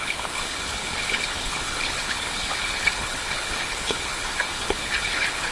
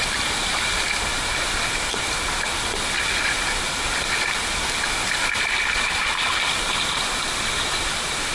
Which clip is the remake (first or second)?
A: first